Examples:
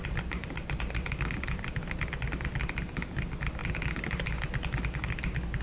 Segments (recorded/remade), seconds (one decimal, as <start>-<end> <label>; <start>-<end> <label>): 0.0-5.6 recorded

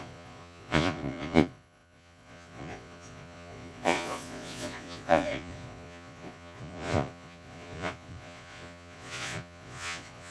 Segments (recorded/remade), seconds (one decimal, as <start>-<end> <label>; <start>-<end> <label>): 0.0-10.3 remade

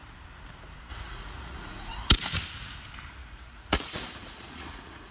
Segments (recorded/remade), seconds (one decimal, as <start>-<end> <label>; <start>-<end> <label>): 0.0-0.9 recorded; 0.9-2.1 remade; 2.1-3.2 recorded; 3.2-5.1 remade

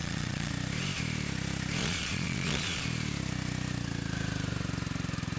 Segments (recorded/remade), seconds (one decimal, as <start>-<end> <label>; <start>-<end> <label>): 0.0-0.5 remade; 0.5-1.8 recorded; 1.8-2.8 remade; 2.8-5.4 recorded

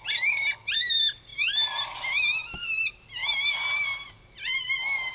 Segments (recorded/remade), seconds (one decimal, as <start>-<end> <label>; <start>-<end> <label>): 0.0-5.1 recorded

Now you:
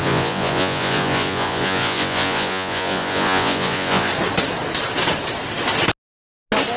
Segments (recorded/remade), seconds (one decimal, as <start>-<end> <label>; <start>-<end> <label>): 0.0-4.1 remade; 4.1-6.8 recorded

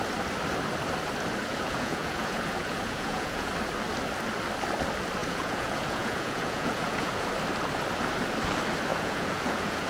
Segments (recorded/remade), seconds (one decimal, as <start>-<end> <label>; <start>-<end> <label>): 0.0-1.4 recorded; 1.4-3.5 remade; 3.5-5.2 recorded; 5.2-7.3 remade; 7.3-8.9 recorded; 8.9-9.9 remade

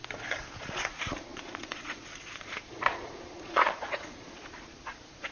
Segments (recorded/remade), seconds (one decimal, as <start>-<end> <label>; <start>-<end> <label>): 0.0-0.6 recorded; 0.6-5.3 remade